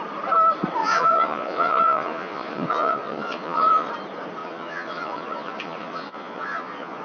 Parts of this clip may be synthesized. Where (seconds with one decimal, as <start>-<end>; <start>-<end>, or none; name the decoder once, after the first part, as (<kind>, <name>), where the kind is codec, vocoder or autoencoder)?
0.8-3.9 (vocoder, Vocos); 4.4-7.0